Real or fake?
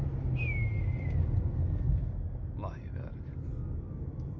real